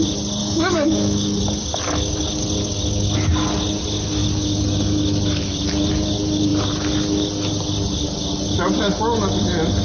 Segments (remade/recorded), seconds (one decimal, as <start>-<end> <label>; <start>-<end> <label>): 0.0-0.4 recorded; 0.4-1.4 remade; 1.4-9.8 recorded